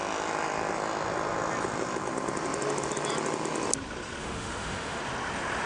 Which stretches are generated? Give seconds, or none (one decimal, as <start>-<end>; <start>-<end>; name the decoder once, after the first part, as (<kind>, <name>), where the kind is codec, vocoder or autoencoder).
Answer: 4.2-5.0 (autoencoder, DAC-VAE)